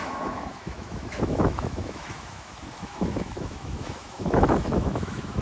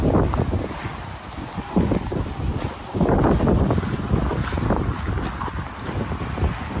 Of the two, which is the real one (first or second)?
second